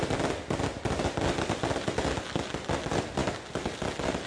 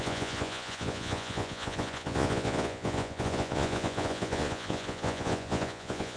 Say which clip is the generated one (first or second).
second